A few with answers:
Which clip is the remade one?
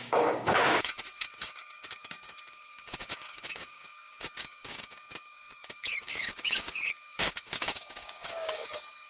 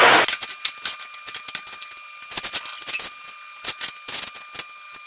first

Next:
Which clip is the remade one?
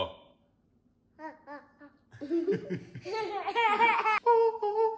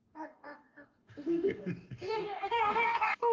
second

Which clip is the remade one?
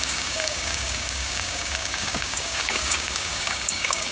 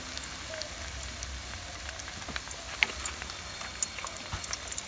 first